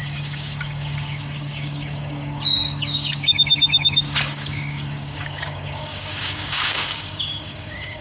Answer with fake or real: fake